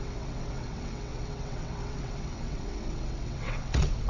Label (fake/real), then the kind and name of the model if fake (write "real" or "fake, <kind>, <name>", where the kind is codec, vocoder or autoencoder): fake, vocoder, WaveNeXt